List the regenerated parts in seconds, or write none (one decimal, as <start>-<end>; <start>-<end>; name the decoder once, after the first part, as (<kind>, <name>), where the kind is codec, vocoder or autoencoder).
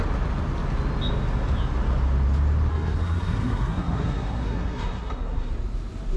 2.7-5.5 (codec, SNAC)